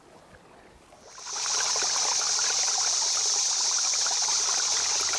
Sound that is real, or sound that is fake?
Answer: real